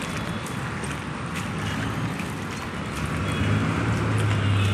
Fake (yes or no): no